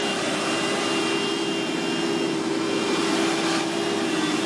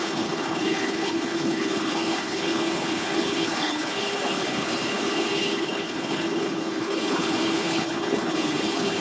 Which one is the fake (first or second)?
second